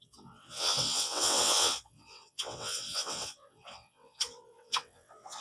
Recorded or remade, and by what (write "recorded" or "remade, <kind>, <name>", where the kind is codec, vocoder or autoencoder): remade, vocoder, WaveNeXt